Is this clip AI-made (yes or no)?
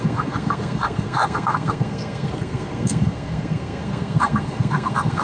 yes